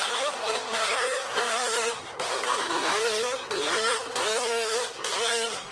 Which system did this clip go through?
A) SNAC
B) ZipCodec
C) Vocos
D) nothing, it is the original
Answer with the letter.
A